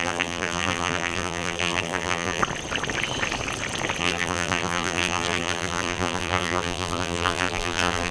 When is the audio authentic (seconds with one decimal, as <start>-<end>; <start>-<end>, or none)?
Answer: 2.4-4.0